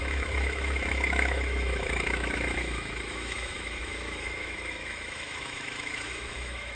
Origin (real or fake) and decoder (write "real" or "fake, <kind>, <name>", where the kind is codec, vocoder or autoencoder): fake, autoencoder, DAC-VAE